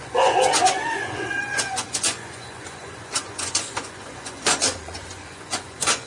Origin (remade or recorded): remade